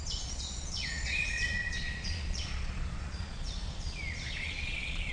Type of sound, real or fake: fake